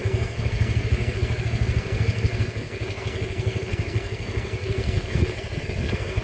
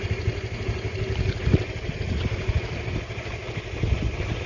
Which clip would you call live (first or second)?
second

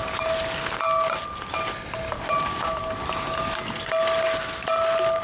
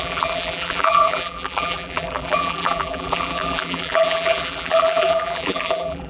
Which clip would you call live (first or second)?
first